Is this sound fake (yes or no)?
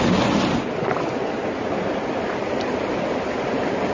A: no